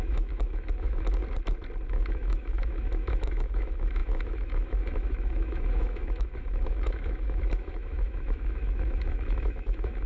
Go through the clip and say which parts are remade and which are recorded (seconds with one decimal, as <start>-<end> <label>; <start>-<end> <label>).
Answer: 0.0-1.2 remade; 1.2-1.9 recorded; 1.9-10.1 remade